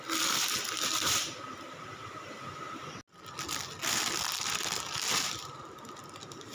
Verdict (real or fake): real